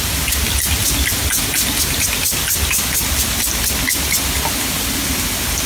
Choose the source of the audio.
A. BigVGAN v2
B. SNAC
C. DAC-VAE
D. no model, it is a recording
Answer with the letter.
D